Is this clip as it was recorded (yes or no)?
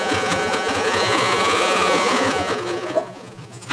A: no